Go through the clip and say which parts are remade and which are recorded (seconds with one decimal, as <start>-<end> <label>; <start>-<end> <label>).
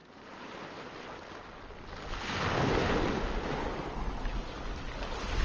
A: 0.0-5.4 recorded